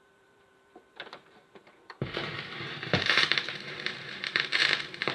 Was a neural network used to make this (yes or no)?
yes